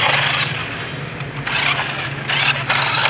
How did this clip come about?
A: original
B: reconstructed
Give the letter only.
A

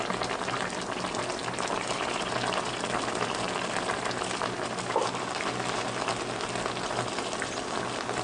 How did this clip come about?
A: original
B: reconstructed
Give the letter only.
A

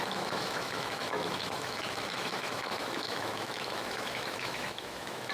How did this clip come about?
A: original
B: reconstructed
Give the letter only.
B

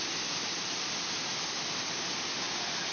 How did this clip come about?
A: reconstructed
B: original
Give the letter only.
B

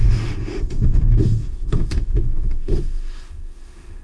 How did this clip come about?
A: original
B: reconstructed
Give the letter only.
B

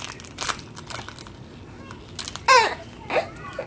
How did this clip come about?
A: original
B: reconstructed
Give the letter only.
A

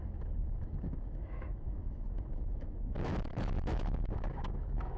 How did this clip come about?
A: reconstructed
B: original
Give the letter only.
A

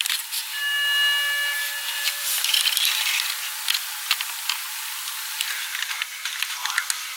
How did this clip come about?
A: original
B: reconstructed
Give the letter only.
A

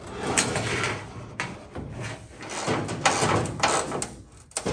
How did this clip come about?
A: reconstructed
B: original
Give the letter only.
B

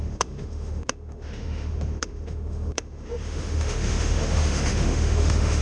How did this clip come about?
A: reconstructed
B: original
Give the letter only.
A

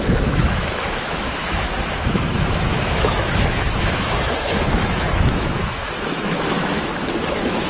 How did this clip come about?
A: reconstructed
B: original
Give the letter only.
A